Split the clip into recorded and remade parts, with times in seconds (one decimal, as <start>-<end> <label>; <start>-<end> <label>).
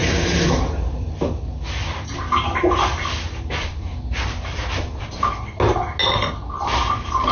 0.0-1.2 remade; 1.2-7.3 recorded